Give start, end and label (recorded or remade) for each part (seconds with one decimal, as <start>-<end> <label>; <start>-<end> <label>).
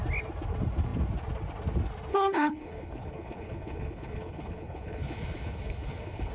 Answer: 0.0-2.1 recorded; 2.1-6.3 remade